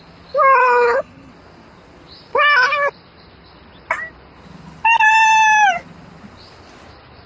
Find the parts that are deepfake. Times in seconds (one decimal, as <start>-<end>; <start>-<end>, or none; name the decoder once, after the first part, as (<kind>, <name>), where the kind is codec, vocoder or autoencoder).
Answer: 0.6-1.3 (codec, HILCodec)